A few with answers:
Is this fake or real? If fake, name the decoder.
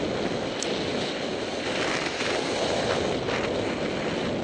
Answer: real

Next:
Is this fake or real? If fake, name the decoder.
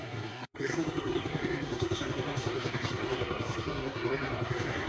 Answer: fake, codec, SNAC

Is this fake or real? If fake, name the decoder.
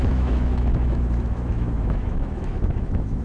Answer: fake, autoencoder, DAC-VAE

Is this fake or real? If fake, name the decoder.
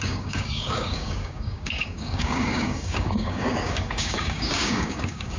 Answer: fake, codec, DAC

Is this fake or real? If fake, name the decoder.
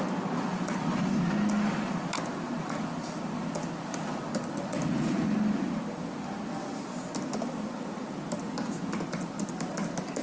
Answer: real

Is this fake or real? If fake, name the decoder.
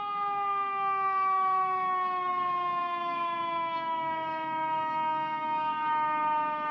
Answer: fake, codec, DAC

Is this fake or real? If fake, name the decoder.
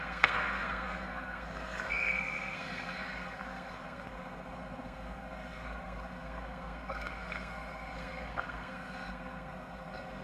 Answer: fake, codec, SNAC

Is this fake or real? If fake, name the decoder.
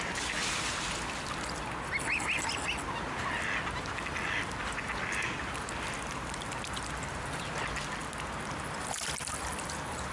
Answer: real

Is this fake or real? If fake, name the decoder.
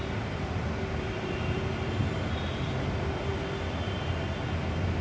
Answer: real